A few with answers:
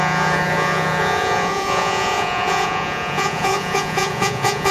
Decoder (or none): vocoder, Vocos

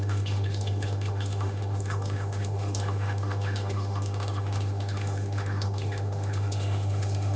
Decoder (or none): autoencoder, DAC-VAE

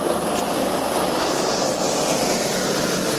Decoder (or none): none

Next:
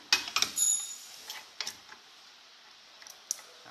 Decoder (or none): none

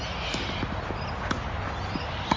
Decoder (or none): none